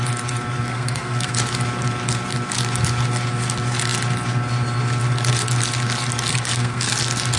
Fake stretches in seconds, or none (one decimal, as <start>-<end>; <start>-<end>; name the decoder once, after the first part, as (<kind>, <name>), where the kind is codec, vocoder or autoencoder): 0.7-1.3 (codec, SNAC); 6.3-6.9